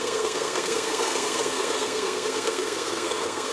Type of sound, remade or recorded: remade